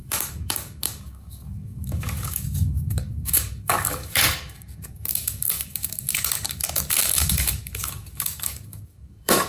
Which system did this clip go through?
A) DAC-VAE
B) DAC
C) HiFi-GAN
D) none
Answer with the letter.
B